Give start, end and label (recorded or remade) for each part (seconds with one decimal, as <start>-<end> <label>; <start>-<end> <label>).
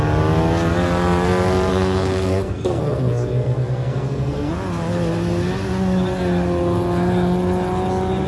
0.0-1.7 recorded; 1.7-4.5 remade; 4.5-8.3 recorded